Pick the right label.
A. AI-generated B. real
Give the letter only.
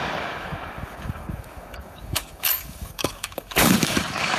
A